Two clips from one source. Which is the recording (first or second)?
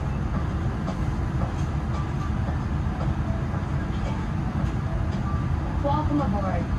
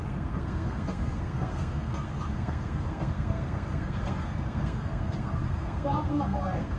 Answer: first